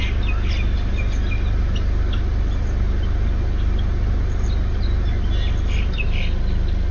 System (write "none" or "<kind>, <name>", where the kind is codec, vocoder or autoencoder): none